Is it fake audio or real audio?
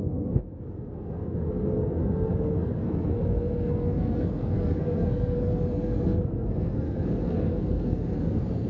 fake